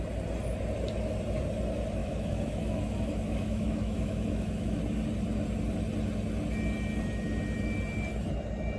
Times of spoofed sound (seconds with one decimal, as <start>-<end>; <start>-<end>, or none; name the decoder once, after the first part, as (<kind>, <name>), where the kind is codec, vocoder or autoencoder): 2.0-4.8 (autoencoder, DAC-VAE)